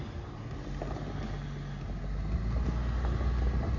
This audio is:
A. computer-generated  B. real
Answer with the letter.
B